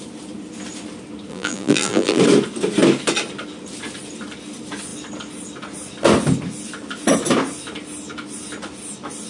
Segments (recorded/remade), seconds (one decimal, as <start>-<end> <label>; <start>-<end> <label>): 0.0-1.3 recorded; 1.3-2.2 remade; 2.2-9.3 recorded